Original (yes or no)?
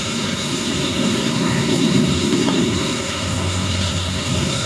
no